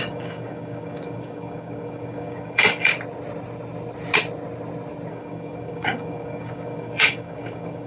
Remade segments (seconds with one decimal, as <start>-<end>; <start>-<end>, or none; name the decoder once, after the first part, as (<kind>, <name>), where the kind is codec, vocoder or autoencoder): 0.0-2.9 (codec, DAC); 5.1-7.9